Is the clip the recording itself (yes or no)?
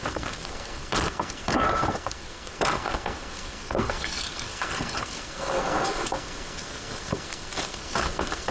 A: no